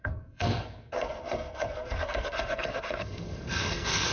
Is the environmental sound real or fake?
fake